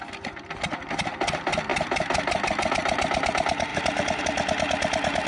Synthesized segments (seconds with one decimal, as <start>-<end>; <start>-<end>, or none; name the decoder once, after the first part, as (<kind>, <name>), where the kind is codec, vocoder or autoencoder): 3.7-4.2 (vocoder, BigVGAN v2)